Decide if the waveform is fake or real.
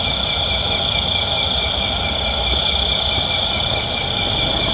real